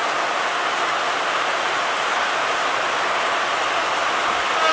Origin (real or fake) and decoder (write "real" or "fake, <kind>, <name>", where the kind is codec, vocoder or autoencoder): real